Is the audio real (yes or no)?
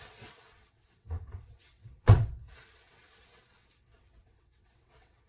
no